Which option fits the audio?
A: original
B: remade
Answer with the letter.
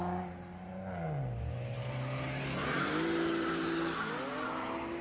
A